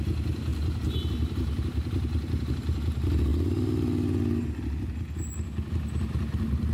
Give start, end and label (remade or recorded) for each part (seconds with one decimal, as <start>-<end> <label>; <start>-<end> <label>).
0.0-0.5 recorded; 0.5-2.5 remade; 2.5-6.7 recorded